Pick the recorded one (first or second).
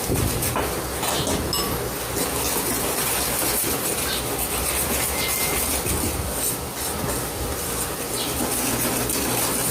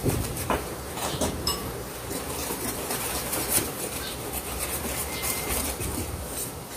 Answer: first